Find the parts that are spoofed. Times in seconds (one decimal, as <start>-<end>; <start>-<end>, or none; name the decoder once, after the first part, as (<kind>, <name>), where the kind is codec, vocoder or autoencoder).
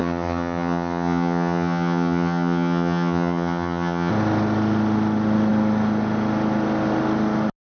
0.0-4.1 (vocoder, HiFi-GAN)